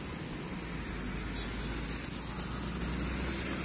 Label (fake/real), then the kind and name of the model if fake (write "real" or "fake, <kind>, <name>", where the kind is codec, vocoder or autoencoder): real